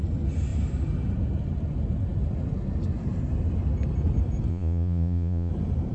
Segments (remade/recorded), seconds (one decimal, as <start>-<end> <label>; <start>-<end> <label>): 0.0-4.5 recorded; 4.5-5.5 remade; 5.5-5.9 recorded